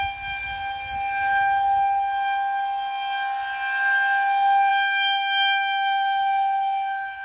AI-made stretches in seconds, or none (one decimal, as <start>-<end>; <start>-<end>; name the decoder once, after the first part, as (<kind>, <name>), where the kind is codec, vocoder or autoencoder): none

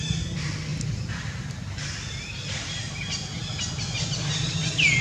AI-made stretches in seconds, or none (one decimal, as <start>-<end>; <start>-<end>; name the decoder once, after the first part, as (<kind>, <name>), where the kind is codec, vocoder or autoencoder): none